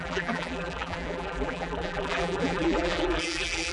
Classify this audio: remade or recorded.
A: remade